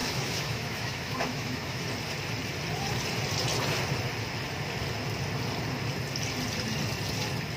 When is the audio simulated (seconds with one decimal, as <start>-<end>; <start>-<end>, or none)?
0.0-1.8